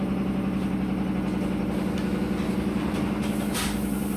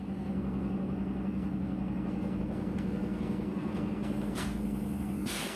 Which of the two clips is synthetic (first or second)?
second